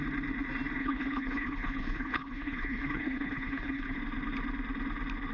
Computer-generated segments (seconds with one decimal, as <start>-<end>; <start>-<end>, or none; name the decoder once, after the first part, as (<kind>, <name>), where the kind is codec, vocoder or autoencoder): 0.8-4.0 (codec, HILCodec)